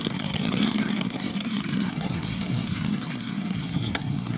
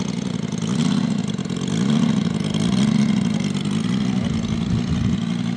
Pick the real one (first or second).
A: second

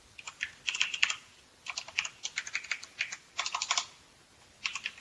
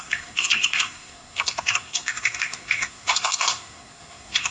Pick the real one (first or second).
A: first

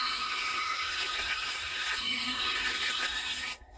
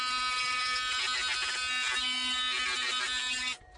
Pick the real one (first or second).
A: second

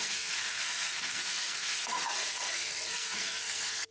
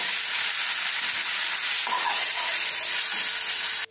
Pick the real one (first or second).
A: second